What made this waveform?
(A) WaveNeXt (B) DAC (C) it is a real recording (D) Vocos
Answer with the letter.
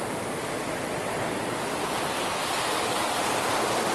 C